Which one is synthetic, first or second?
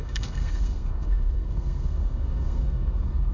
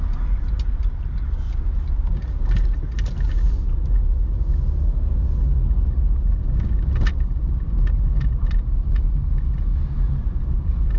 first